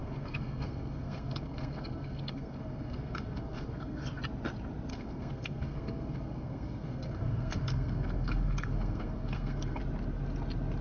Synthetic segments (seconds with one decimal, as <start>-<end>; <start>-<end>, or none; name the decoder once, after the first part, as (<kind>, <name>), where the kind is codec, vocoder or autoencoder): 0.0-4.2 (codec, SNAC); 4.9-9.8